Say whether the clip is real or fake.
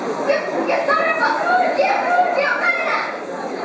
real